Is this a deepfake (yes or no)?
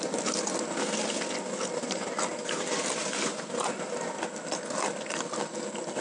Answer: no